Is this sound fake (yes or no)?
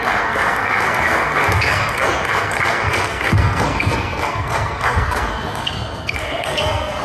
yes